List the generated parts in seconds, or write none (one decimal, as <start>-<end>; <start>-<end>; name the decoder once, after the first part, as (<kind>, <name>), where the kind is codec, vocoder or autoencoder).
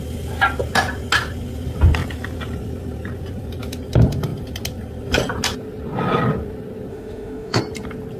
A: 6.9-7.6 (autoencoder, DAC-VAE)